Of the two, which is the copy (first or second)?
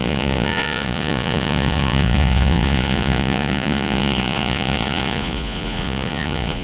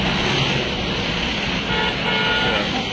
first